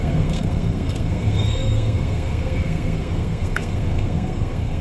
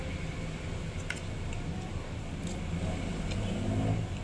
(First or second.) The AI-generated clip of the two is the first